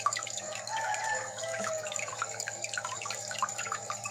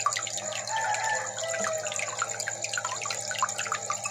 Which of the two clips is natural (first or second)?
second